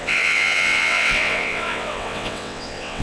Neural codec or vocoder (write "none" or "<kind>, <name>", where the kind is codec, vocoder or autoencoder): vocoder, WaveNeXt